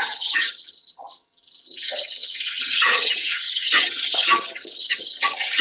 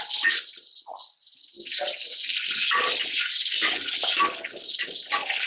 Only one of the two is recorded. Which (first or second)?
second